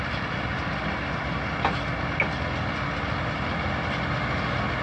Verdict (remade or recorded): recorded